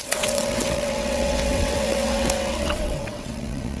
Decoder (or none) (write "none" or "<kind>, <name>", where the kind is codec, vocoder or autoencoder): vocoder, WaveNeXt